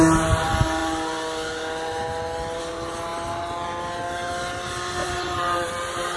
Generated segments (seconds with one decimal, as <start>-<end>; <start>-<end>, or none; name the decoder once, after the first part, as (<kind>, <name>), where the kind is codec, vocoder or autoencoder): 5.0-5.7 (vocoder, BigVGAN v2)